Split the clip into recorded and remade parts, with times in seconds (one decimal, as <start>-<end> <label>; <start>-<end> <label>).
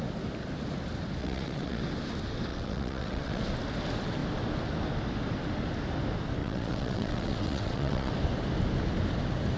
0.0-1.2 recorded; 1.2-1.8 remade; 1.8-2.5 recorded; 2.5-3.4 remade; 3.4-6.4 recorded; 6.4-8.1 remade; 8.1-9.6 recorded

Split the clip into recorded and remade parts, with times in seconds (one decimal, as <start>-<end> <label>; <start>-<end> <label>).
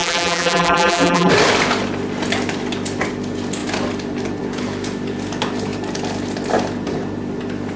0.0-1.3 remade; 1.3-7.8 recorded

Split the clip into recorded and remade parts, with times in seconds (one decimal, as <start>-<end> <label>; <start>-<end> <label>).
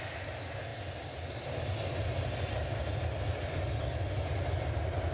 0.0-5.1 recorded